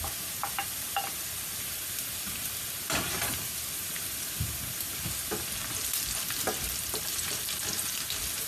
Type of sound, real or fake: real